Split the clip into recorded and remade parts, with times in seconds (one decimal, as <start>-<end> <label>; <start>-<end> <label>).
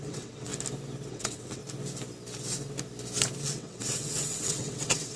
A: 0.0-0.5 remade; 0.5-1.1 recorded; 1.1-1.6 remade; 1.6-3.4 recorded; 3.4-5.2 remade